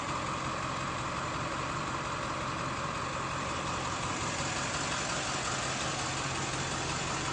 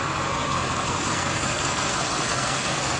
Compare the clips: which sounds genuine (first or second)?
first